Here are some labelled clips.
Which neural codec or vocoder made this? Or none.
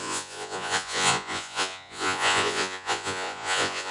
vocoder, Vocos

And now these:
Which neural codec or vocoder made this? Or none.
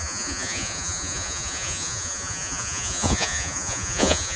vocoder, Vocos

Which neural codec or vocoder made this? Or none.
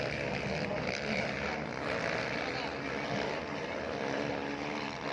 none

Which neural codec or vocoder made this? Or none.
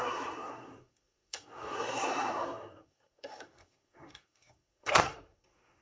codec, SNAC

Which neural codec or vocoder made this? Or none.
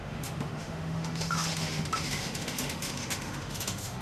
autoencoder, DAC-VAE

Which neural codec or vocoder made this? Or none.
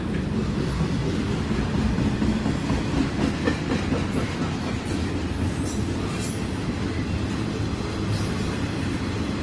none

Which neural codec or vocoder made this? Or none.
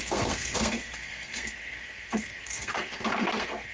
codec, SNAC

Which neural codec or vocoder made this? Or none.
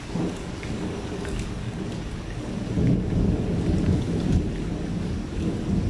codec, DAC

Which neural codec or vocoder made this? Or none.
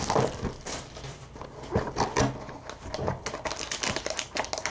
none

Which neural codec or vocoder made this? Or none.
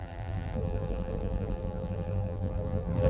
vocoder, BigVGAN v2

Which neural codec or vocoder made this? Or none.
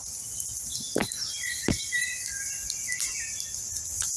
none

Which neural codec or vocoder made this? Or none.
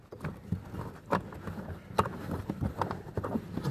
none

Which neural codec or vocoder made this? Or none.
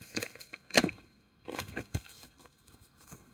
codec, SNAC